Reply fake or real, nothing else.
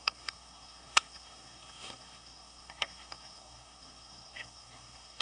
fake